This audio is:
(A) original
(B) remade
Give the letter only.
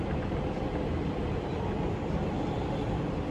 A